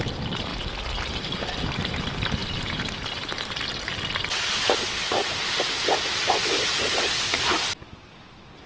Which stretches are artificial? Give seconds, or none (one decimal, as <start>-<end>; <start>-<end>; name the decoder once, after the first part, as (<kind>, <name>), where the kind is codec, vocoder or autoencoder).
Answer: none